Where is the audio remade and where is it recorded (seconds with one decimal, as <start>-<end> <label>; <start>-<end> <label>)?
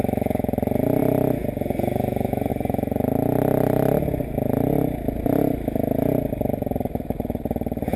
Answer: 0.0-8.0 recorded